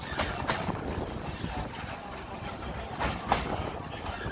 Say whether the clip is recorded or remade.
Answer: recorded